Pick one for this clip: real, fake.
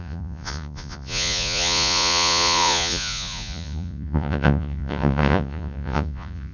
fake